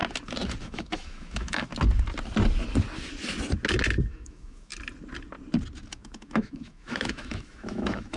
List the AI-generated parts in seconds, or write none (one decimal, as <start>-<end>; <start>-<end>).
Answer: 0.6-1.7; 4.1-4.7; 5.9-8.2